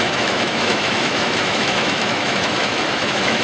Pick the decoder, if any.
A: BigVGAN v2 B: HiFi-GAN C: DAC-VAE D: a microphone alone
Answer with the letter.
C